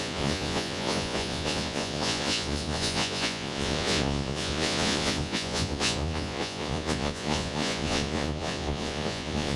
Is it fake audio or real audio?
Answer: fake